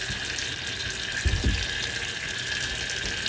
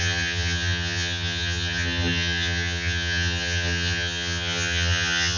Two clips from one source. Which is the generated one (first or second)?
second